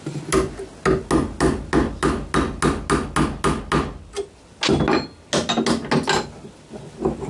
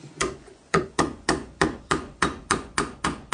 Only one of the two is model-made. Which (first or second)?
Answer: second